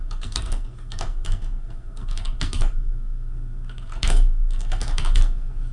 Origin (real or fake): fake